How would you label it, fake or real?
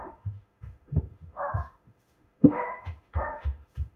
fake